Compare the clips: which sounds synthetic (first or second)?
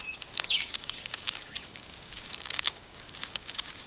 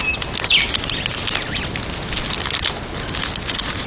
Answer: first